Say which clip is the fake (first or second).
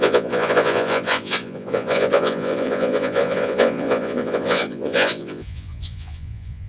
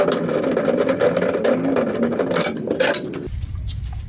first